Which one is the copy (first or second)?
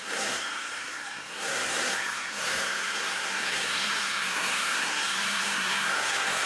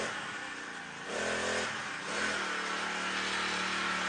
first